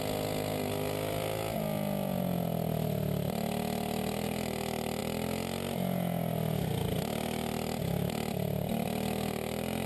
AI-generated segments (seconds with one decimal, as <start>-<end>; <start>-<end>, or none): none